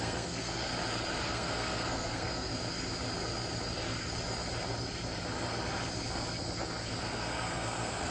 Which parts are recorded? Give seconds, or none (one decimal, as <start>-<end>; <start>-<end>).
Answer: 0.7-1.2; 2.5-7.0